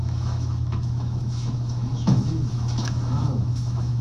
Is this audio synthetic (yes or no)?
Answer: yes